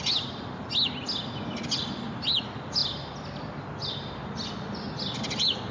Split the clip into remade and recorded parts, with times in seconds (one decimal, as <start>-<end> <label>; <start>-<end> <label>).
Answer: 0.0-5.7 recorded